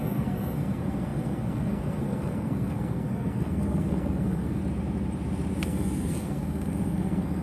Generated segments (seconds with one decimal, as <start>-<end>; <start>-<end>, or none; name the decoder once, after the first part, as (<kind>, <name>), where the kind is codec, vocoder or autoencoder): 0.0-4.6 (codec, SNAC); 5.6-7.4